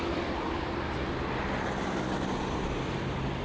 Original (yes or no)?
yes